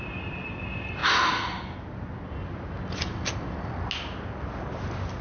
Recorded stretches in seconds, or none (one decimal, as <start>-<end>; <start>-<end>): 0.0-5.2